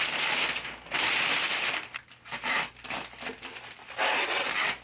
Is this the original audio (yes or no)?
yes